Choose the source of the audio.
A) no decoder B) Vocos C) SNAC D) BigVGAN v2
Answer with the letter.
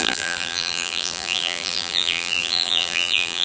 D